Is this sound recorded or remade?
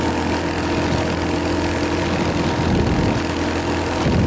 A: recorded